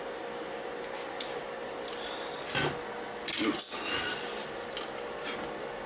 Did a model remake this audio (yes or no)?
no